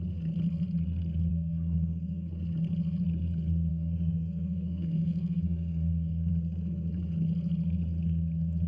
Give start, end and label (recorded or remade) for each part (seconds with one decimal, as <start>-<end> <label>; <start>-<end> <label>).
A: 0.0-1.3 recorded; 1.3-2.3 remade; 2.3-3.7 recorded; 3.7-6.3 remade; 6.3-8.7 recorded